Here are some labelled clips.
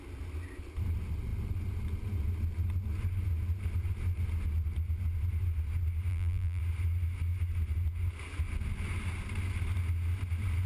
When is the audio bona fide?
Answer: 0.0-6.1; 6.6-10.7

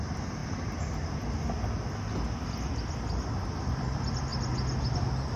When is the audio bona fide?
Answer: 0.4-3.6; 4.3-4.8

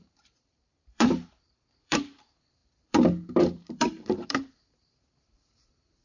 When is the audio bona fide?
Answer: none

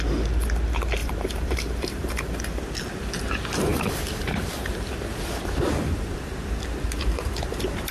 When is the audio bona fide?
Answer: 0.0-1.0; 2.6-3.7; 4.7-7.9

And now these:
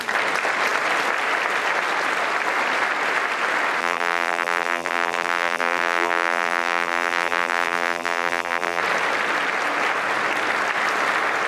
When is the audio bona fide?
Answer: 0.0-3.8; 8.8-11.5

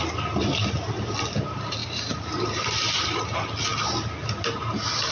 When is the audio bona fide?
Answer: 0.0-1.8; 3.2-5.1

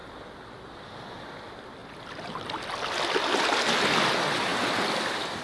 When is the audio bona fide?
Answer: 0.0-1.8; 2.4-5.4